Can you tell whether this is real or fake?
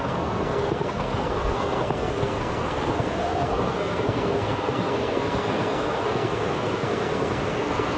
fake